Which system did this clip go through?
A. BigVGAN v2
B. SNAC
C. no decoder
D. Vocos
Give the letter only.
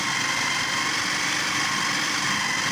C